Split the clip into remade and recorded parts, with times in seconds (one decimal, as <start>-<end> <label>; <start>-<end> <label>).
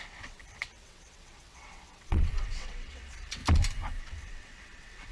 0.0-3.4 remade; 3.4-4.0 recorded; 4.0-5.1 remade